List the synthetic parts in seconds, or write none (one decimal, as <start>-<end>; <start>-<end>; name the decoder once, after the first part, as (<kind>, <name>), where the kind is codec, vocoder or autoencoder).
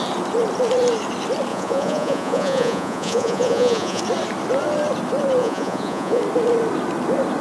1.5-4.0 (vocoder, Vocos); 5.4-6.2